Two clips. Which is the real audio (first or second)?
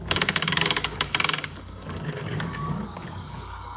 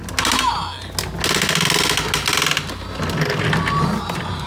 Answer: second